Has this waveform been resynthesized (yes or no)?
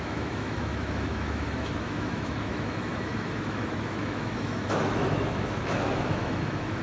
yes